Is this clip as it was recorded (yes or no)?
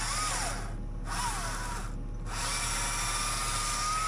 yes